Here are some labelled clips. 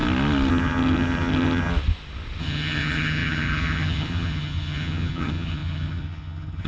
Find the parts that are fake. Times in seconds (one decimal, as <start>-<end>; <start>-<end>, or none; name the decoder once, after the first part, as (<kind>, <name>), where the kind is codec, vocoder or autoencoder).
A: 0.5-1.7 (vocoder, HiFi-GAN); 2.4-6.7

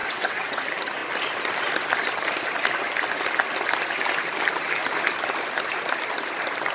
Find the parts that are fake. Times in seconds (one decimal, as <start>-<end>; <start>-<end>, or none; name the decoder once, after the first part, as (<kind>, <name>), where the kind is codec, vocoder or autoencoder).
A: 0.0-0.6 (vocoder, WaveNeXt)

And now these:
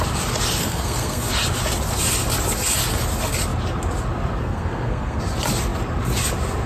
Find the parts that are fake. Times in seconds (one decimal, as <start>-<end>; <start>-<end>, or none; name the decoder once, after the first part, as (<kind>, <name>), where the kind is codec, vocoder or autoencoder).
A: 0.6-1.3 (codec, SNAC); 4.4-5.2